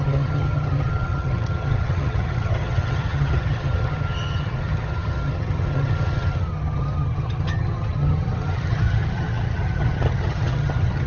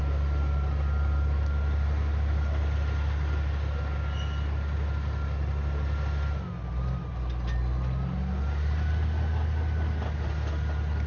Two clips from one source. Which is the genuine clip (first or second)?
second